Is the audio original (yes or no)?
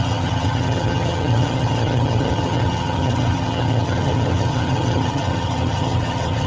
no